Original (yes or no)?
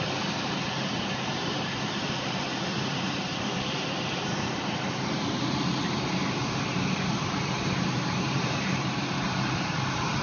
no